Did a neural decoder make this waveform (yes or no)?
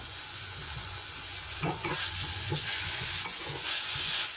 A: yes